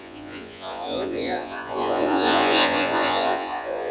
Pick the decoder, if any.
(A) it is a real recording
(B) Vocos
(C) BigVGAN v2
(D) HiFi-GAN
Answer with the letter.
B